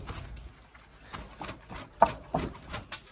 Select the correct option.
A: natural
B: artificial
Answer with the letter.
A